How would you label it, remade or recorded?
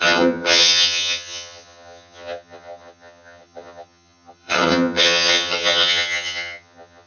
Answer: remade